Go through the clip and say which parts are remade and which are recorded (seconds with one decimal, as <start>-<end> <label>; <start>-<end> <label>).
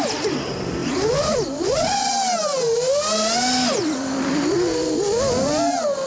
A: 0.0-6.1 recorded